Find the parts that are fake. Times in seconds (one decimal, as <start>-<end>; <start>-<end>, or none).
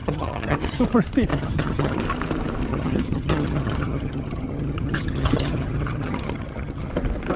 0.0-0.8; 1.3-2.0; 2.7-6.9